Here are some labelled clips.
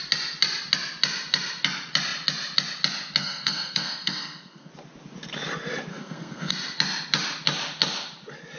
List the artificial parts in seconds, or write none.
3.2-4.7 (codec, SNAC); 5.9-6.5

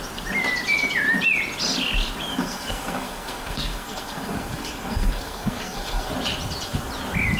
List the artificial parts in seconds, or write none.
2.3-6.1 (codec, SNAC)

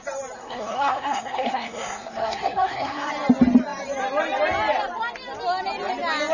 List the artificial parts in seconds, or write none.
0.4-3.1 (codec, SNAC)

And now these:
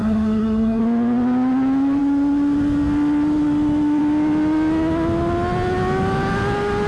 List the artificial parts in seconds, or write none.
0.0-0.8 (codec, SNAC)

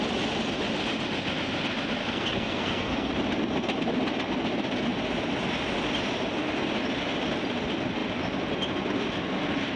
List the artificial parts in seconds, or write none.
2.0-3.1 (codec, SNAC)

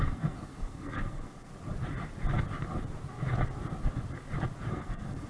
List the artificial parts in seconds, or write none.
0.0-1.5 (codec, SNAC); 4.7-5.3

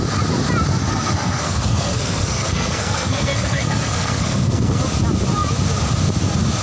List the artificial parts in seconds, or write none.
0.8-4.8 (codec, SNAC)

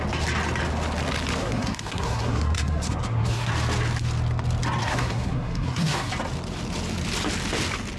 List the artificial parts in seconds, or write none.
1.4-3.5 (codec, SNAC); 4.8-6.1